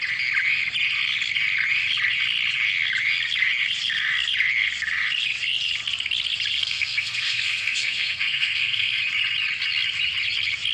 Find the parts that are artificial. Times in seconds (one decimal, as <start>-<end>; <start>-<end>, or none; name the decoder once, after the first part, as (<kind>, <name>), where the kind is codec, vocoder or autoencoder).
6.6-9.0 (codec, SNAC)